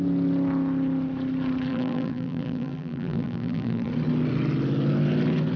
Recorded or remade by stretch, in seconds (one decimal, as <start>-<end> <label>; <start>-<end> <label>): 0.0-1.7 recorded; 1.7-3.9 remade; 3.9-5.6 recorded

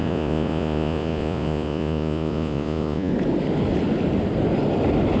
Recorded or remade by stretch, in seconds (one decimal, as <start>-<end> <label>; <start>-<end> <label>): 0.0-3.1 remade; 3.1-5.2 recorded

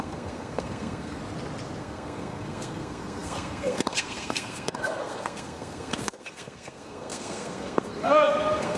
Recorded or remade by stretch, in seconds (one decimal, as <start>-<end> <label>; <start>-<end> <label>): 0.0-1.2 remade; 1.2-1.8 recorded; 1.8-8.8 remade

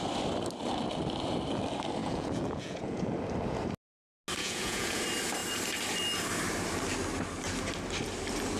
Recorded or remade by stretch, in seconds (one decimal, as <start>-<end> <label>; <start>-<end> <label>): 0.0-2.0 recorded; 2.0-3.1 remade; 3.1-4.4 recorded; 4.4-5.0 remade; 5.0-8.6 recorded